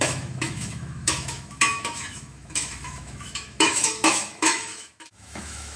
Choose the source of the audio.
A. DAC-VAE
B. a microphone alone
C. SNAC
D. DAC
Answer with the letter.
A